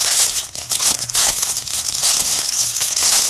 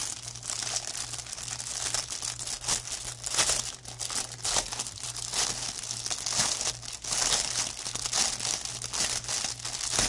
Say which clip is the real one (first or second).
second